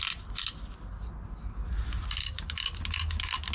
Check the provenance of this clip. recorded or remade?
recorded